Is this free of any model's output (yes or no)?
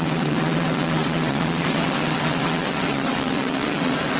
no